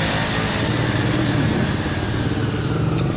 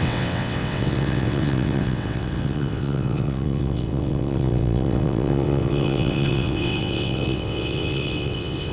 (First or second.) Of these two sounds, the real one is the first